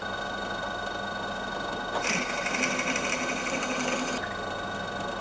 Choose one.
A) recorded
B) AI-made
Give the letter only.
A